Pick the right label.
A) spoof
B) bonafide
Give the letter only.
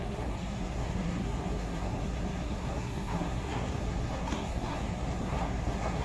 A